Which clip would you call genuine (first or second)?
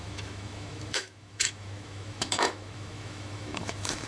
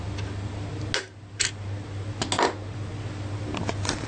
second